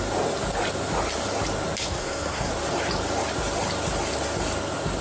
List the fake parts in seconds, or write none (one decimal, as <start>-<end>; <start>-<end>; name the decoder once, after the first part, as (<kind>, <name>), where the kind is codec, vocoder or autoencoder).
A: 1.8-2.5 (codec, SNAC)